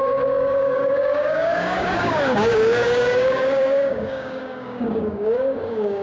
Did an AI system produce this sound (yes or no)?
yes